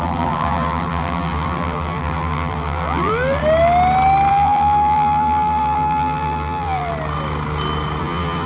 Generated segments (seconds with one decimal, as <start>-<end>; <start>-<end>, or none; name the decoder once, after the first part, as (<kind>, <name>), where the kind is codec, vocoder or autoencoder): 0.0-3.4 (vocoder, BigVGAN v2); 4.3-6.9; 8.0-8.5

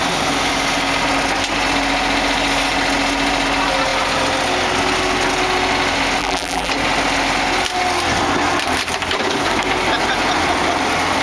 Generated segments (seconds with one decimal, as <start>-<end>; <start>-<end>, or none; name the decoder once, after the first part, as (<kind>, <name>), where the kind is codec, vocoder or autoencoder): 6.2-6.7 (vocoder, BigVGAN v2)

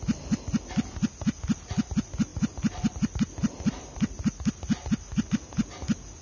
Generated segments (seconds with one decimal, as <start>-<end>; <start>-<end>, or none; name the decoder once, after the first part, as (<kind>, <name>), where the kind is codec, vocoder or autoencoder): none

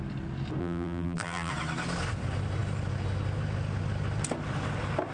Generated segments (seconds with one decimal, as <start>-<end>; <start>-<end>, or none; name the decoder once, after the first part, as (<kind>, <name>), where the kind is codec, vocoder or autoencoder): 0.6-1.5 (vocoder, BigVGAN v2)

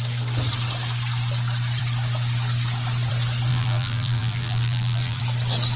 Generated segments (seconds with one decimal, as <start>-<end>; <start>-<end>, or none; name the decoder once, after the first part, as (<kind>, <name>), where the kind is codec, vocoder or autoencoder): 3.5-5.2 (vocoder, BigVGAN v2)

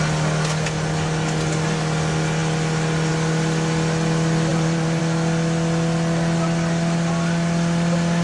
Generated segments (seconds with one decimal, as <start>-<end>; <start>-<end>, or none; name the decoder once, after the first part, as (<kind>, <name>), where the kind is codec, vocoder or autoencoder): 4.5-5.0 (vocoder, BigVGAN v2)

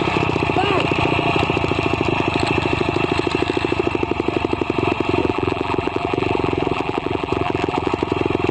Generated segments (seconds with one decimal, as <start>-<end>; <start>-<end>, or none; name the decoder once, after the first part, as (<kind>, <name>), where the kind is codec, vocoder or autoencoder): 5.2-7.9 (vocoder, BigVGAN v2)